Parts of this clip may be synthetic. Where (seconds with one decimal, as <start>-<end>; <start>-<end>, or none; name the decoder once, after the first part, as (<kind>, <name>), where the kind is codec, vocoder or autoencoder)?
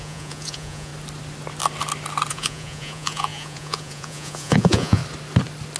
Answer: 0.0-0.9 (vocoder, Vocos); 2.3-5.0